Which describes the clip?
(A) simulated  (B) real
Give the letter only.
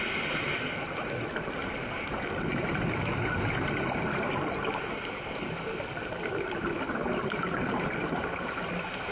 B